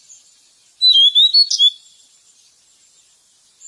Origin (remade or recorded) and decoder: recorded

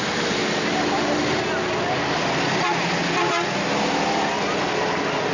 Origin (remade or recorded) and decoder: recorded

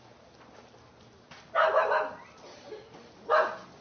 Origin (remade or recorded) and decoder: recorded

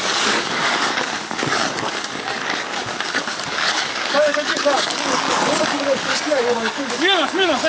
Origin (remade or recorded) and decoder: remade, codec, DAC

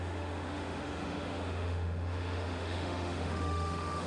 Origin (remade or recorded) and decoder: remade, autoencoder, DAC-VAE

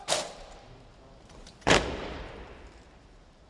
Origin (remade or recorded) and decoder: remade, vocoder, BigVGAN v2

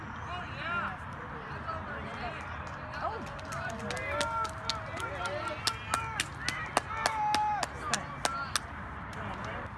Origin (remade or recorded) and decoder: recorded